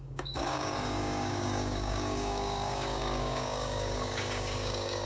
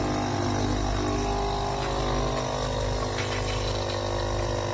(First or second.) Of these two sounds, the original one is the second